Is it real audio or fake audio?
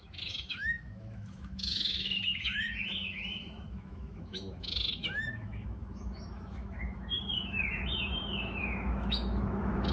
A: fake